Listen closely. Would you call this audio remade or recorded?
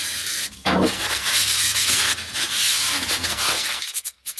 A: remade